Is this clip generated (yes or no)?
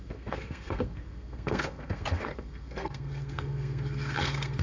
yes